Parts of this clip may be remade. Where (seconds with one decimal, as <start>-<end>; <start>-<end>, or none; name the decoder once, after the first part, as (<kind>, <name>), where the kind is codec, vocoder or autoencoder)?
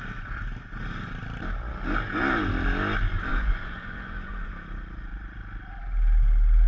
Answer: 3.3-4.5 (vocoder, Vocos)